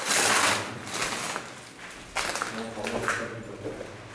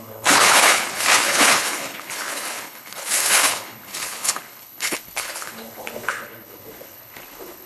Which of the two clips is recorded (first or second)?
first